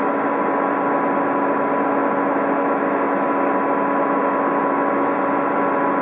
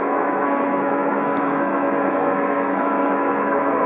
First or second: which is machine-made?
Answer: second